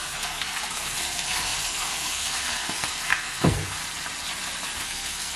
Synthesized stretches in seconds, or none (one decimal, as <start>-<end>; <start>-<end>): 0.0-3.8; 4.8-5.4